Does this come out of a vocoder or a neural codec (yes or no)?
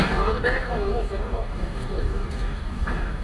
yes